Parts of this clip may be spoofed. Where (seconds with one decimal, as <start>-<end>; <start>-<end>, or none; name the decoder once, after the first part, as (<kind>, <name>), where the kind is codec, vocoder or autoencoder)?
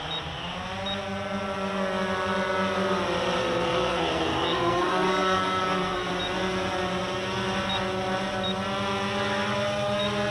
3.4-6.1 (codec, SNAC)